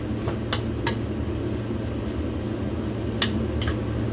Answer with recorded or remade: recorded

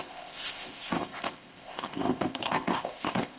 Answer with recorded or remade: remade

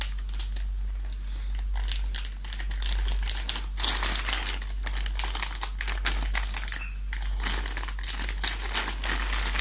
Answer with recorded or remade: recorded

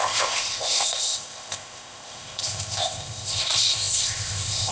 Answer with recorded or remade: remade